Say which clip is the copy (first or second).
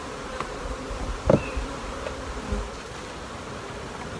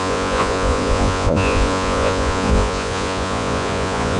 second